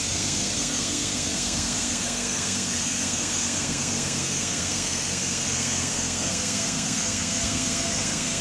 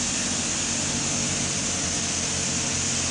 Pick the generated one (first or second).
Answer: first